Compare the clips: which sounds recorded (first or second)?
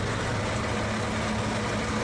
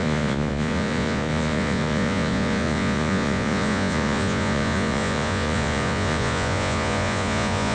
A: first